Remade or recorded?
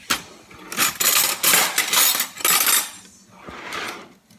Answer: recorded